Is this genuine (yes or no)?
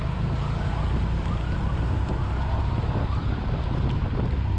yes